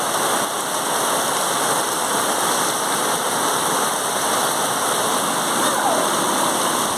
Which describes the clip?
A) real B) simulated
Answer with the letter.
A